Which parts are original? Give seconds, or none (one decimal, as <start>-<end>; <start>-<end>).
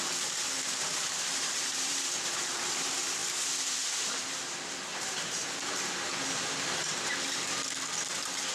3.2-4.2